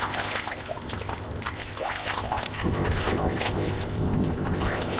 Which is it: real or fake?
fake